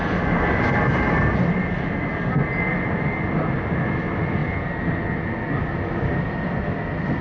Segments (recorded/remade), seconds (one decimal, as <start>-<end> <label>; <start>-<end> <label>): 0.0-7.2 recorded